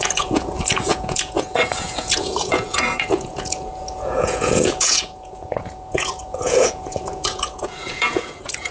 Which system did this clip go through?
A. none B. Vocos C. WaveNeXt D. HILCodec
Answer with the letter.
B